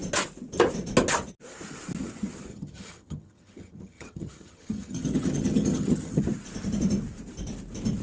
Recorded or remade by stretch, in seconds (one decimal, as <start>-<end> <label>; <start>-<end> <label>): 0.0-2.5 recorded; 2.5-6.2 remade; 6.2-8.0 recorded